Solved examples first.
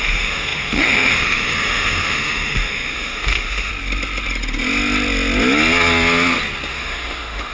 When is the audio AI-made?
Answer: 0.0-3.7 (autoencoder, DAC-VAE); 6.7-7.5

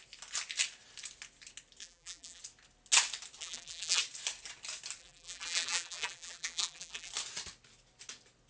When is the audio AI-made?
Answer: 1.8-2.4 (vocoder, BigVGAN v2); 3.4-4.0; 5.0-7.1

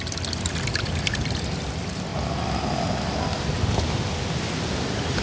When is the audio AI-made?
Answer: 0.0-2.1 (vocoder, BigVGAN v2)

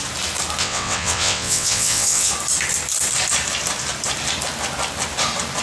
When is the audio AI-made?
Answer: 0.6-2.3 (vocoder, WaveNeXt)

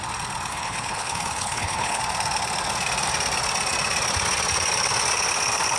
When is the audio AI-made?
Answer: 0.5-2.0 (codec, HILCodec)

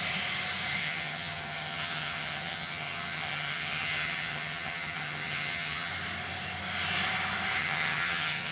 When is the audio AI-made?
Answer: 0.8-5.9 (vocoder, HiFi-GAN); 7.6-8.5

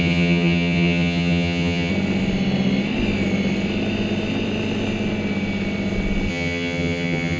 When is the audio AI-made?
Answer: 0.0-1.9 (vocoder, HiFi-GAN); 6.3-7.4

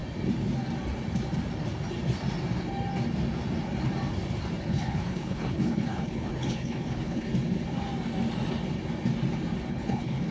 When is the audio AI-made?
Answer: 4.6-7.3 (codec, HILCodec); 9.7-10.3